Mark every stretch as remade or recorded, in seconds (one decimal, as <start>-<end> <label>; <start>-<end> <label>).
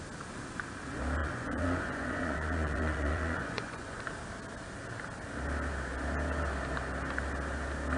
0.0-1.2 recorded; 1.2-4.0 remade; 4.0-8.0 recorded